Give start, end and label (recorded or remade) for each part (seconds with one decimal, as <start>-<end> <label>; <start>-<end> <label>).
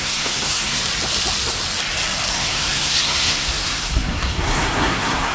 0.0-0.8 remade; 0.8-2.3 recorded; 2.3-5.3 remade